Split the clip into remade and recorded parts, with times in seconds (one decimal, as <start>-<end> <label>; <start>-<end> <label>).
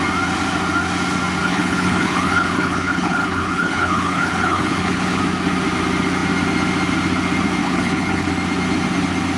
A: 0.0-1.4 recorded; 1.4-5.2 remade; 5.2-7.6 recorded; 7.6-8.3 remade; 8.3-9.4 recorded